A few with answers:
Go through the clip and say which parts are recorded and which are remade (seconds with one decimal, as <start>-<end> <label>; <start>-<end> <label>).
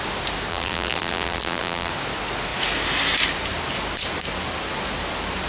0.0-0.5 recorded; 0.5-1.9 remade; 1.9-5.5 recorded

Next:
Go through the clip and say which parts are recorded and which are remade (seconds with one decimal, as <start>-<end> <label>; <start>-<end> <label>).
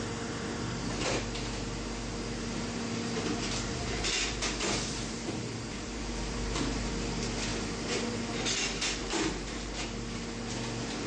0.0-3.7 recorded; 3.7-6.9 remade; 6.9-9.0 recorded; 9.0-9.7 remade; 9.7-11.1 recorded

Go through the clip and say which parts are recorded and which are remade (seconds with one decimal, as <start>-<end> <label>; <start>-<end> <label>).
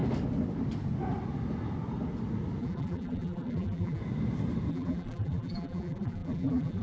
0.0-2.6 recorded; 2.6-4.0 remade; 4.0-4.7 recorded; 4.7-6.8 remade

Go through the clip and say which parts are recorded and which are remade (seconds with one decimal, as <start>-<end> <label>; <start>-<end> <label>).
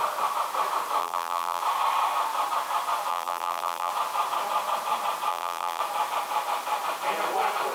0.0-1.0 recorded; 1.0-1.6 remade; 1.6-3.1 recorded; 3.1-3.9 remade; 3.9-5.3 recorded; 5.3-5.8 remade; 5.8-7.7 recorded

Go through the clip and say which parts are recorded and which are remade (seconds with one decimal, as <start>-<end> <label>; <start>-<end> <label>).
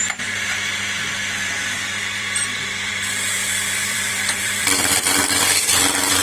0.0-6.2 remade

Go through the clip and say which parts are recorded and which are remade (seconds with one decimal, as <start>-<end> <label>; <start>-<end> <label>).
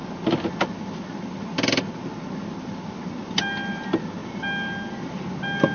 0.0-5.7 recorded